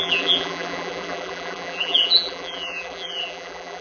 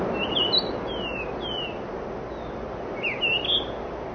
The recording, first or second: second